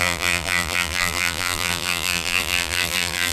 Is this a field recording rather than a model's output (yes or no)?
no